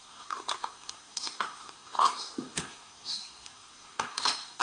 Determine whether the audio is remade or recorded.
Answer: remade